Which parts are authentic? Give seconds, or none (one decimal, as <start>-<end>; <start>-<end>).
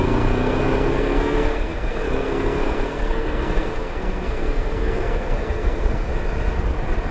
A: 6.1-7.1